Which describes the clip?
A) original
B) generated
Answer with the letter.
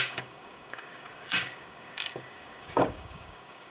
B